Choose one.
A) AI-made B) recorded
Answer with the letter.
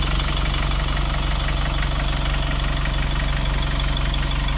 B